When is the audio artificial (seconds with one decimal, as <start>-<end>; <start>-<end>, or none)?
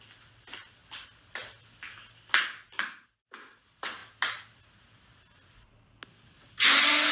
none